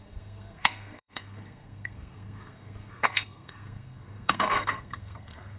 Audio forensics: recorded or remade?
remade